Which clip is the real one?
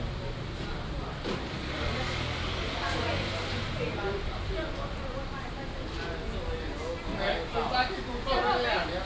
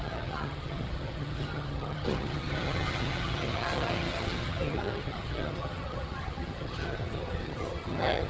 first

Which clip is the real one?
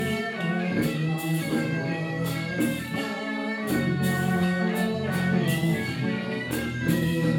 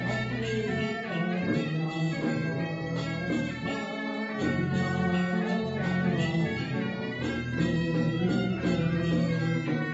second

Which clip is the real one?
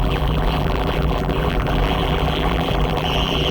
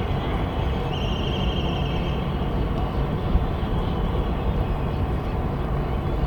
second